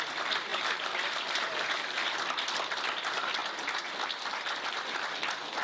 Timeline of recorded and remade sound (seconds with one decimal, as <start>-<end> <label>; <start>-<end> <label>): 0.0-0.5 recorded; 0.5-2.1 remade; 2.1-5.6 recorded